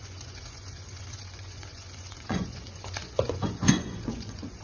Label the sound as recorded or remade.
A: remade